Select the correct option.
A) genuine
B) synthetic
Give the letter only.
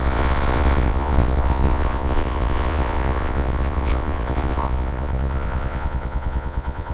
B